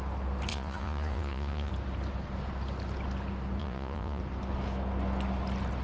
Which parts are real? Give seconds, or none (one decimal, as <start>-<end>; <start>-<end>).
0.0-0.5; 1.7-3.6; 4.2-5.8